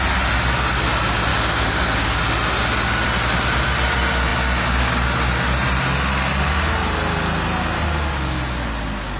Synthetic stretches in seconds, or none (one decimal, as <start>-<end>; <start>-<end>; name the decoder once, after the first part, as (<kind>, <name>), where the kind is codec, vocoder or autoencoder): 1.3-2.2 (codec, DAC)